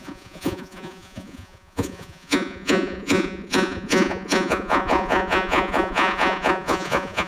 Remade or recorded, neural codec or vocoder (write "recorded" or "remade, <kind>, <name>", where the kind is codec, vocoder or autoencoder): remade, vocoder, Vocos